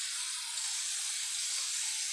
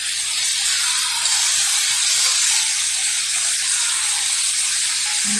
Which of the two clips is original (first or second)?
second